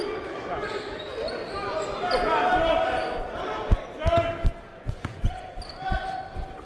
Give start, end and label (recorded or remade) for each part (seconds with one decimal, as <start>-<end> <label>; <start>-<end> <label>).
0.0-4.7 recorded; 4.7-5.6 remade; 5.6-6.7 recorded